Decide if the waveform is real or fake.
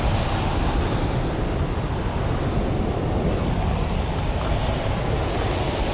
real